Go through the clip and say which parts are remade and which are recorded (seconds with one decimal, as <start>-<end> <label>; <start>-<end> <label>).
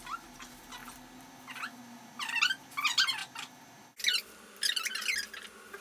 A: 0.0-5.8 recorded